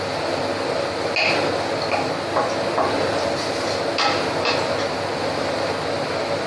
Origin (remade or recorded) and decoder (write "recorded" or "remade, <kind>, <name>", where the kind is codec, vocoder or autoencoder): recorded